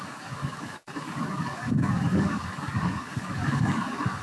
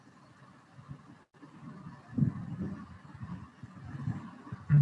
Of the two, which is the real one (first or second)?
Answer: second